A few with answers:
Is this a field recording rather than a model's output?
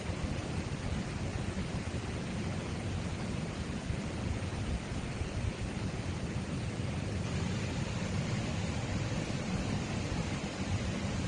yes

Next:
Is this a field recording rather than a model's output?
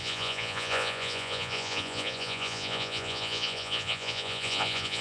no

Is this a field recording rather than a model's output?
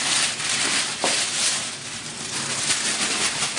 yes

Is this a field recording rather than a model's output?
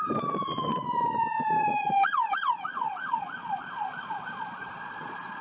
no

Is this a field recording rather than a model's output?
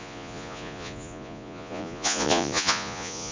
no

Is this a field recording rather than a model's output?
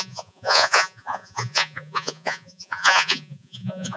no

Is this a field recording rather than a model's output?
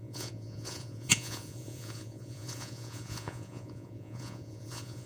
no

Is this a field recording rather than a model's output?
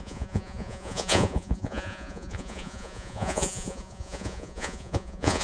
no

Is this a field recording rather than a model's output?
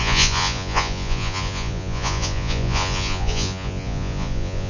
no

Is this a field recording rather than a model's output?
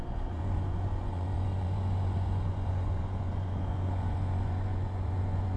no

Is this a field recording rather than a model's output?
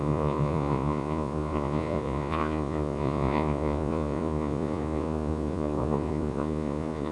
no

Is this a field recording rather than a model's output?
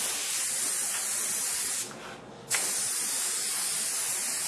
yes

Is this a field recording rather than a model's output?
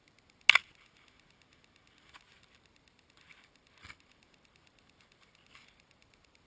yes